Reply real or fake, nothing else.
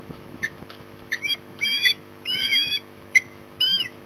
fake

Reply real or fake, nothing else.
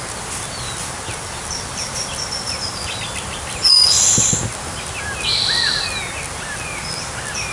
real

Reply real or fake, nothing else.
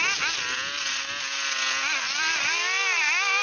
real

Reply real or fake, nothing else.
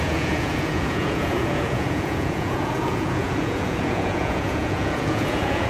fake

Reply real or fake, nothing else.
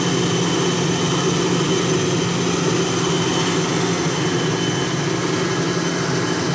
real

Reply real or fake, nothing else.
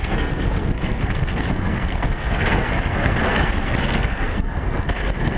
fake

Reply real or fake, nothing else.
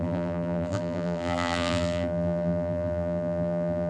fake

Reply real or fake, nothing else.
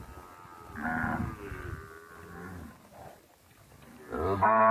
real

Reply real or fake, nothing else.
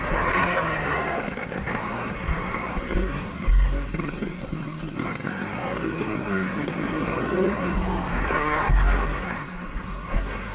fake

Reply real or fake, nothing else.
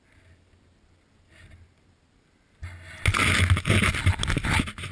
real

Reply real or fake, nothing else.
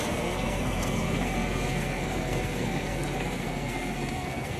fake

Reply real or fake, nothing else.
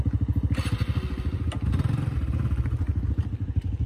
real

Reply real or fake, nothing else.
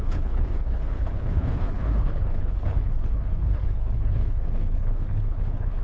fake